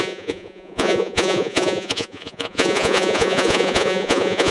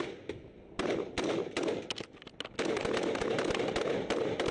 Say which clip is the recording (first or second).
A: second